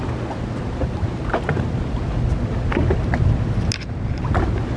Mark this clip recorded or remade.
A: recorded